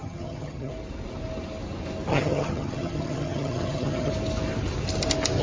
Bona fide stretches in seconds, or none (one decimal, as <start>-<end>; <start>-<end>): 0.7-2.1; 4.1-5.4